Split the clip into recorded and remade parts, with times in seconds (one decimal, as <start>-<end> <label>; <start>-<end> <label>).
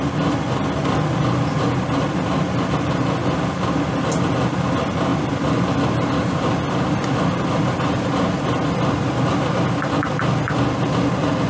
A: 0.0-11.5 recorded